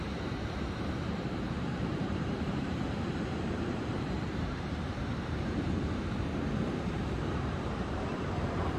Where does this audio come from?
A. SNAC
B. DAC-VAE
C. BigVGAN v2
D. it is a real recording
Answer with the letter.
C